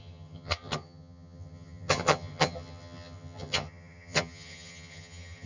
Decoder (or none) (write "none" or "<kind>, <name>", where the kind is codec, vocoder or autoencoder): vocoder, HiFi-GAN